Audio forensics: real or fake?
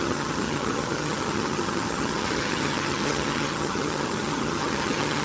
fake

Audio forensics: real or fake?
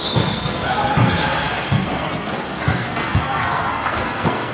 fake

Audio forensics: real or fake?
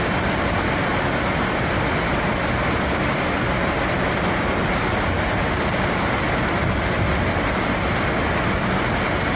real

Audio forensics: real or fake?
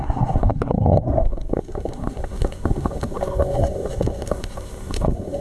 fake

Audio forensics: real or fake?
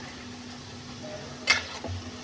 real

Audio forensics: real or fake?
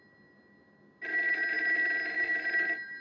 real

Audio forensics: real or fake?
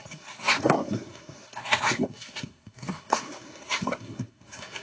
fake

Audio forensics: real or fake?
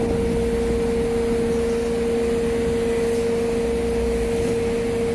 real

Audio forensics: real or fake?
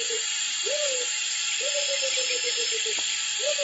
fake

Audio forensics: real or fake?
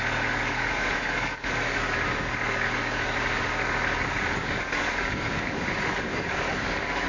fake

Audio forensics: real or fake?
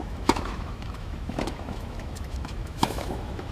fake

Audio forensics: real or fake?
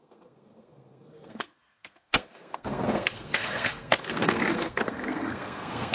fake